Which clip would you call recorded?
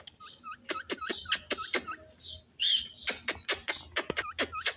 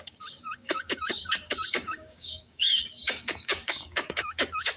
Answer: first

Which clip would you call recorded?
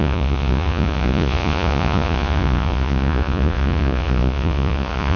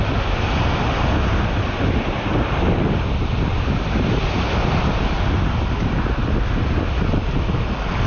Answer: second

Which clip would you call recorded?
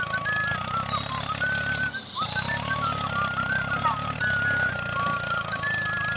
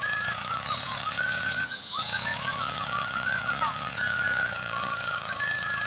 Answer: first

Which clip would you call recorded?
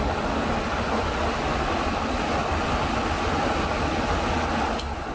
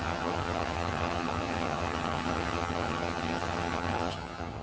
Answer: first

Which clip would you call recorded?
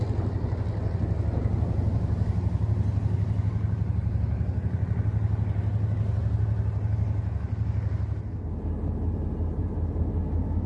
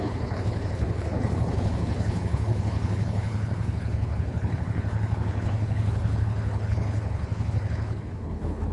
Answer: first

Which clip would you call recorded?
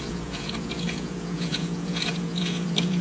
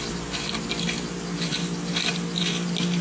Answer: second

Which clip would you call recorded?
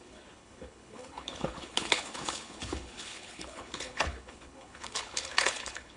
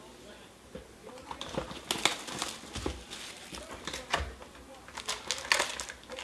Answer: second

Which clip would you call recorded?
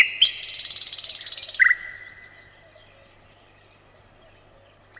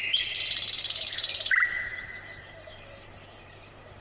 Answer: first